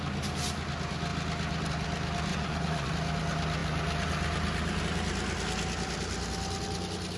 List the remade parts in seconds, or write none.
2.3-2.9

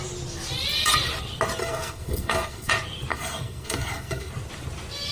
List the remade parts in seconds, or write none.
1.6-2.7; 3.1-4.3